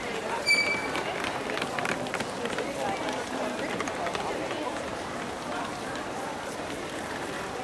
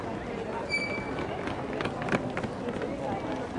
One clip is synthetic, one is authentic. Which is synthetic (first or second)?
first